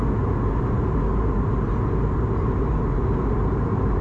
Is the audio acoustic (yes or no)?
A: yes